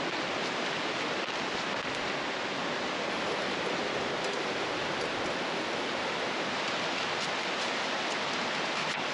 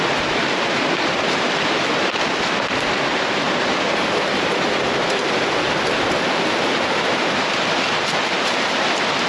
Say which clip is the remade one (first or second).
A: second